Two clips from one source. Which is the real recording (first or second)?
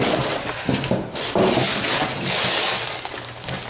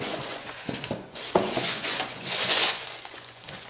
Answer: first